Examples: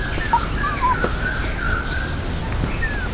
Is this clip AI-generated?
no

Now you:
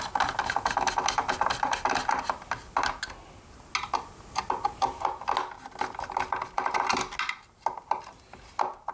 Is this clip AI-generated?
no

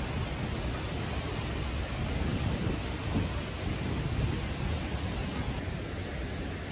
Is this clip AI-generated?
no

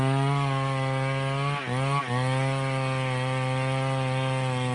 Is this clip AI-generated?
no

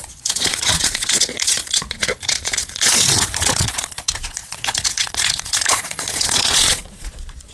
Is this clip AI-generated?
yes